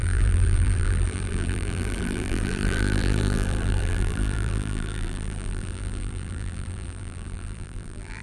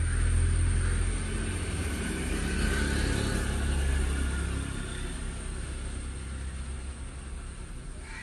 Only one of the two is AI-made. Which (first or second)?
first